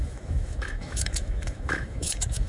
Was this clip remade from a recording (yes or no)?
yes